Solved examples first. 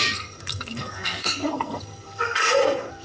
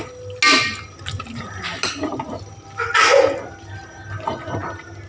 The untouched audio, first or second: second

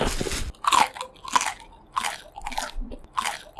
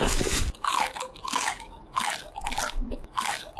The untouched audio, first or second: first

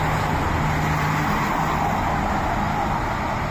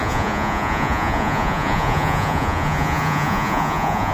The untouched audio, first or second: first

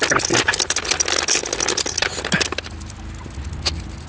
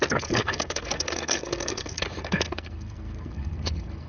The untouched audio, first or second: first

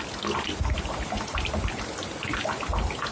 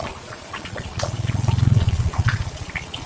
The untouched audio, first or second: first